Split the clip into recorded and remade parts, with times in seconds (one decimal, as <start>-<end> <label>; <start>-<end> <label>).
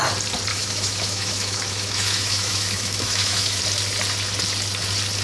0.0-0.5 recorded; 0.5-3.6 remade; 3.6-5.2 recorded